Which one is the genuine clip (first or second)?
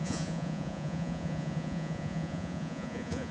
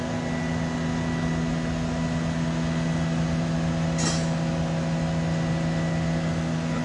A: second